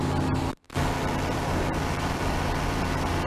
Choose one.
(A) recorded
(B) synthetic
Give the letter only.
B